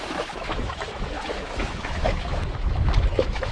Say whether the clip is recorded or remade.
remade